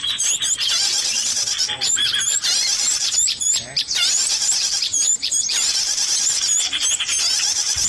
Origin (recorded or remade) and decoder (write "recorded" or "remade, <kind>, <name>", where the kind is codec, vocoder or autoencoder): remade, vocoder, BigVGAN v2